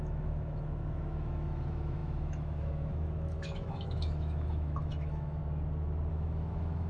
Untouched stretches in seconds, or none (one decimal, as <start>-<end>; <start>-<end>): 5.4-6.1